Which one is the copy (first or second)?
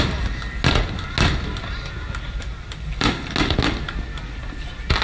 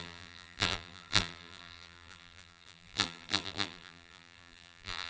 second